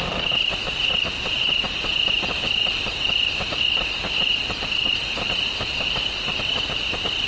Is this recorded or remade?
remade